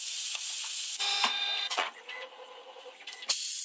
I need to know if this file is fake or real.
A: fake